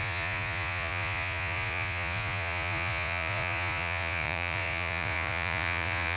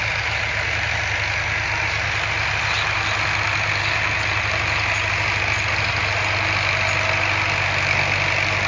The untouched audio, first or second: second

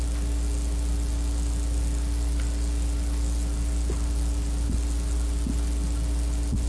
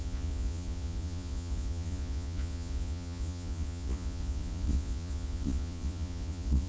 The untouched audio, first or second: first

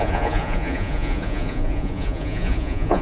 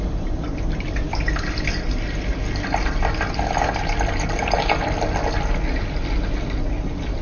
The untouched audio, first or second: second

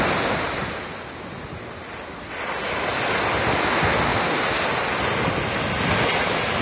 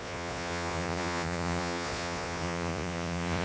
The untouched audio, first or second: first